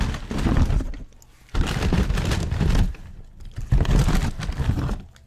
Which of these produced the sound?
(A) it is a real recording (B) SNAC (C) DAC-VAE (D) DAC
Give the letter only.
A